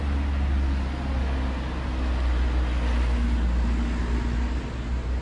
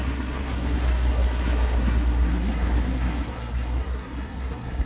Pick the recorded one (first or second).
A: first